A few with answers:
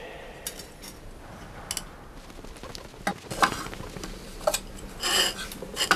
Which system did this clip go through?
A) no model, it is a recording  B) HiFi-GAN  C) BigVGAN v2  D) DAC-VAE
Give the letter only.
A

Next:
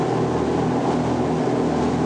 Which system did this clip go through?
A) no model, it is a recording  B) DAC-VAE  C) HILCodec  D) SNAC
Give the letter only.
A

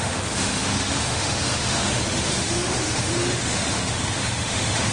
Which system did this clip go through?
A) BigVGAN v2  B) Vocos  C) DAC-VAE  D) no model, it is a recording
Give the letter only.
C